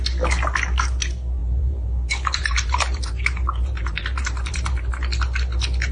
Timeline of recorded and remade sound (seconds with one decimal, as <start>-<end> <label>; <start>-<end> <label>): 0.0-1.4 recorded; 1.4-4.9 remade; 4.9-5.9 recorded